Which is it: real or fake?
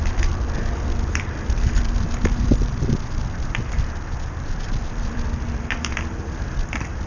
fake